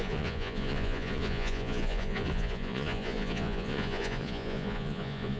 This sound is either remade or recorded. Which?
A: remade